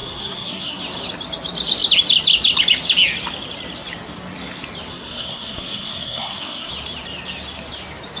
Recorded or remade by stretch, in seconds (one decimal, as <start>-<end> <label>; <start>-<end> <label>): 0.0-0.8 remade; 0.8-4.9 recorded; 4.9-6.7 remade; 6.7-8.2 recorded